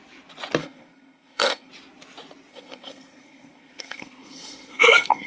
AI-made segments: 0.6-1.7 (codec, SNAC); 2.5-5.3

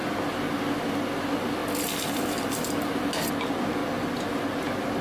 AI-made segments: none

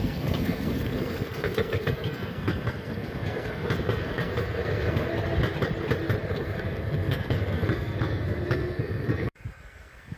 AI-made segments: 0.0-5.1 (codec, SNAC); 6.3-10.2

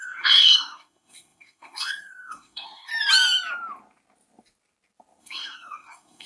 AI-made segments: 0.0-2.9 (codec, SNAC); 5.2-6.3

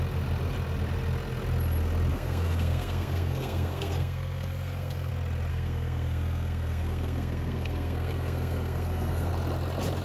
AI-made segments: 2.1-5.1 (codec, SNAC); 5.5-9.3

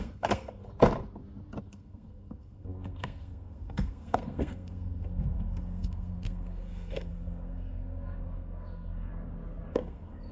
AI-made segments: 0.0-0.6 (codec, SNAC); 1.6-9.1; 9.7-10.3

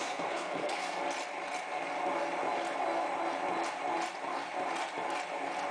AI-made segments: 0.0-1.0 (codec, SNAC)